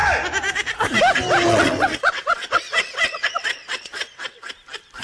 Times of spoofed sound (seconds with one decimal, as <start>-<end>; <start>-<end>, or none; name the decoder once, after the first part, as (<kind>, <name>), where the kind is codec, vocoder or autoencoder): 1.5-4.5 (vocoder, WaveNeXt)